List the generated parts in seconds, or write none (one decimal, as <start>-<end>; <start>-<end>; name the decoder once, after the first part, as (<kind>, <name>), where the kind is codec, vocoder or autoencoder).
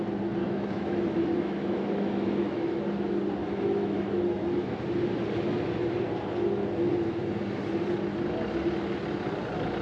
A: 0.4-2.8 (autoencoder, DAC-VAE); 3.4-4.8